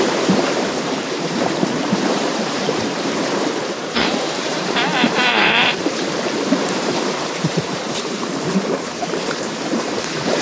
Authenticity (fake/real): fake